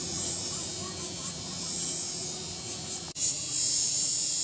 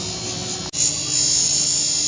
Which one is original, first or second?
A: second